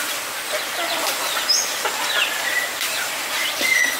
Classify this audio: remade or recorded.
recorded